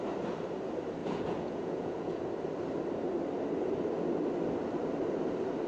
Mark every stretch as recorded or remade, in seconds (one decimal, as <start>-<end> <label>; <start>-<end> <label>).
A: 0.0-1.0 recorded; 1.0-2.2 remade; 2.2-5.7 recorded

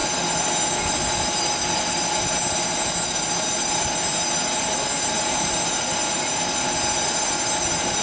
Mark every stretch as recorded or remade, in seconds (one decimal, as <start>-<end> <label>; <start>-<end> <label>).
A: 0.0-8.0 recorded

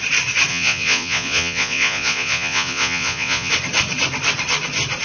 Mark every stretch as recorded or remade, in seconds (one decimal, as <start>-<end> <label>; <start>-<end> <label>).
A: 0.0-0.5 recorded; 0.5-3.5 remade; 3.5-5.0 recorded

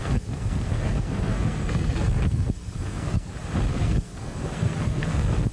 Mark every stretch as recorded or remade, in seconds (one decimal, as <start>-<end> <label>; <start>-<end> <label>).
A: 0.0-3.3 remade; 3.3-3.7 recorded; 3.7-5.5 remade

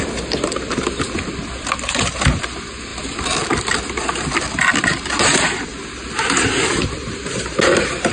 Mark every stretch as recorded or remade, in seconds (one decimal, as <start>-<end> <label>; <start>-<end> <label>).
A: 0.0-2.9 recorded; 2.9-5.2 remade; 5.2-8.1 recorded